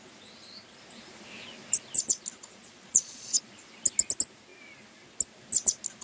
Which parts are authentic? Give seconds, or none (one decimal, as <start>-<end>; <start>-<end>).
0.0-2.6; 3.4-6.0